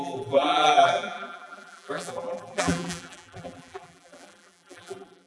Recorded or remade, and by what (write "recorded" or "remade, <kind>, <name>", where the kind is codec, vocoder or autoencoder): remade, vocoder, BigVGAN v2